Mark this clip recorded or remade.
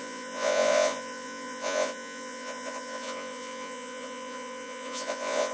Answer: remade